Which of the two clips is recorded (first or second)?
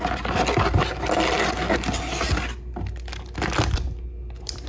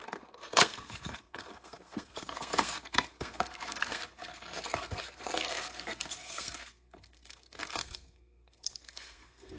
first